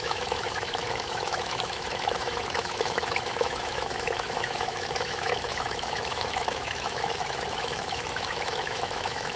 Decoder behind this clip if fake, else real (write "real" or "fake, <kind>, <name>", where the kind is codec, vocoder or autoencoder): fake, autoencoder, DAC-VAE